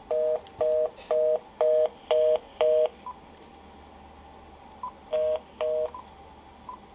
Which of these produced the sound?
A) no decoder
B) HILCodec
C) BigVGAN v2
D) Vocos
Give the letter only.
A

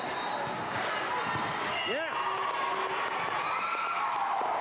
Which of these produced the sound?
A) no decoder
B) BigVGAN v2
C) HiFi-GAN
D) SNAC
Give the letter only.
A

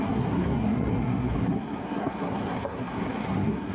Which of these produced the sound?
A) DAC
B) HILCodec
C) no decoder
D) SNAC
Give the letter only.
D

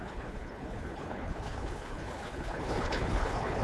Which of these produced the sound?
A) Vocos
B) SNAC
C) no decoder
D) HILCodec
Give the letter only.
D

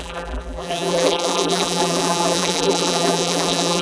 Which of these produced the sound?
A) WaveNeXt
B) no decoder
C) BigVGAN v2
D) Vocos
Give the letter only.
C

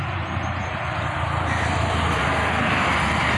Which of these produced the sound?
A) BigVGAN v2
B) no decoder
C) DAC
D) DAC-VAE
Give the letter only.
B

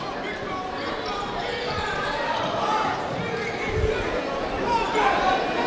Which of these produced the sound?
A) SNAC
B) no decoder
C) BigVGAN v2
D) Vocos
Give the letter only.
B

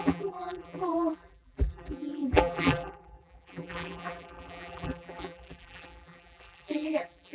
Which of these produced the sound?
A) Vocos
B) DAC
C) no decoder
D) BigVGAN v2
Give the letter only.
D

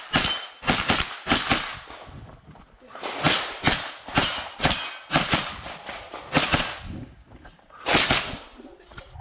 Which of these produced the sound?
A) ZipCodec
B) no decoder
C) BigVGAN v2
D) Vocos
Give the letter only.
B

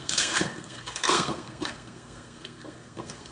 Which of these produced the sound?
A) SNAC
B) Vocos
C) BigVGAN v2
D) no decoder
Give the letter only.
A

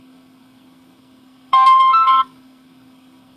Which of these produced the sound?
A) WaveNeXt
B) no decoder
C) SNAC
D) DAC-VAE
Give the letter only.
C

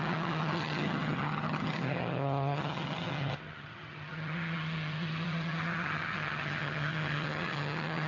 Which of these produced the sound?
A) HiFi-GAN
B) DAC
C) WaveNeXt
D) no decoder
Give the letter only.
A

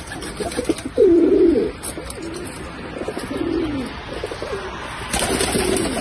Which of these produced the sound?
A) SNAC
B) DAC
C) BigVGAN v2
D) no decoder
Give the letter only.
D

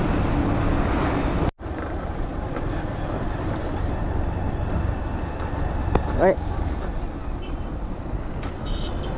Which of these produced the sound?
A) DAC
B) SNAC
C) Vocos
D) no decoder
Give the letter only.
D